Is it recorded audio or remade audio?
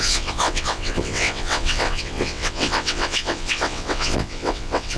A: remade